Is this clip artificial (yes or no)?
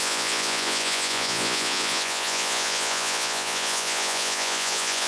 yes